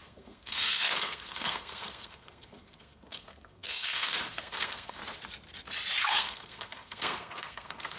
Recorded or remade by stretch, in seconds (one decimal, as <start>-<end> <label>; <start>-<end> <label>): 0.0-5.0 remade; 5.0-6.0 recorded; 6.0-8.0 remade